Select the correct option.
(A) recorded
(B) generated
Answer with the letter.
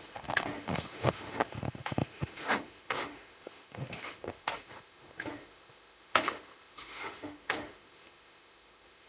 B